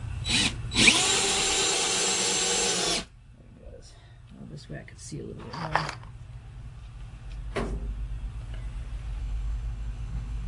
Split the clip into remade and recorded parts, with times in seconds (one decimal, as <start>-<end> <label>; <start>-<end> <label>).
0.0-9.2 recorded; 9.2-10.5 remade